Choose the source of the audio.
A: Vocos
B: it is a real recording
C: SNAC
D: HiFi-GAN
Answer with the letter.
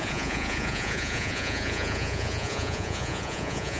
A